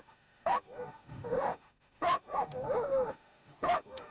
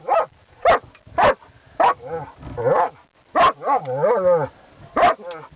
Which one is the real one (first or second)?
second